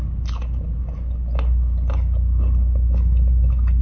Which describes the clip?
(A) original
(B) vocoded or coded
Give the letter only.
A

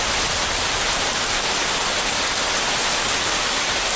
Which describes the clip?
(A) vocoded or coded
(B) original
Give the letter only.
B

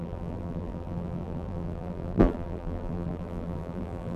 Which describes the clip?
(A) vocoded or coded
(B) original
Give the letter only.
A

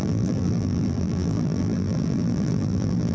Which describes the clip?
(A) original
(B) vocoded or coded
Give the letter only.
B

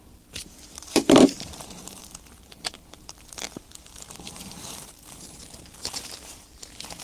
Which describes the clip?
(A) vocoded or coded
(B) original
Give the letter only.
A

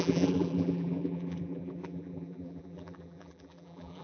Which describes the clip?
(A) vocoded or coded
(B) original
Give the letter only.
A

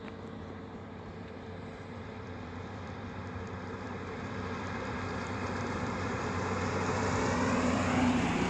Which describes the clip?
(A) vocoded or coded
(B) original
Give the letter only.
A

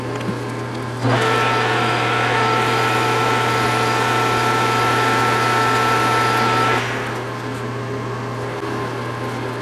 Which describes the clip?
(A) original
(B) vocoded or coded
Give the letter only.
A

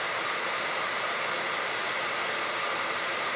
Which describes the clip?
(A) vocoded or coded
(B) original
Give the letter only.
A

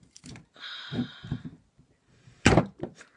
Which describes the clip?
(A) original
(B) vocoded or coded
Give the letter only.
B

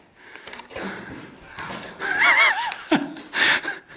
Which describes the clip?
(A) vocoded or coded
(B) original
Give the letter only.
A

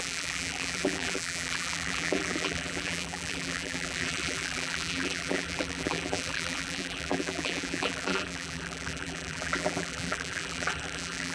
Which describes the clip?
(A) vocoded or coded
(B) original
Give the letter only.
A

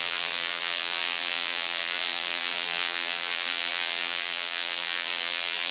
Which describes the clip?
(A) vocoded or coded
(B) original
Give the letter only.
A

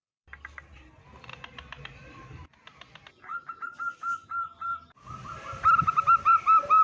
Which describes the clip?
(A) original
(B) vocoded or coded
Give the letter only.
B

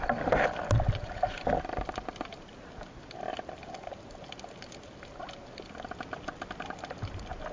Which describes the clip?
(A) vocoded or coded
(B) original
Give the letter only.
B